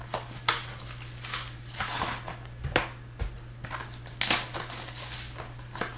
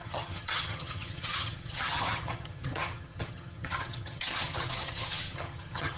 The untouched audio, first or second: first